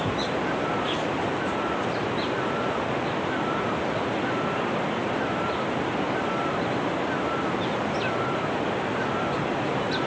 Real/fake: real